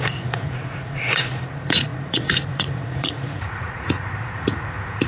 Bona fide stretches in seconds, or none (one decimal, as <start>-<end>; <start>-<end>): none